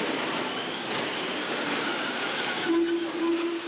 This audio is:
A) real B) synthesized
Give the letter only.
B